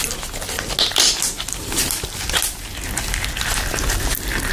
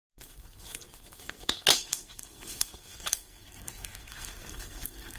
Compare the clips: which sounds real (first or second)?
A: first